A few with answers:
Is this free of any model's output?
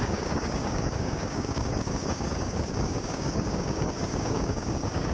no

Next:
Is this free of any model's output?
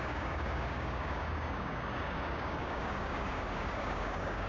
no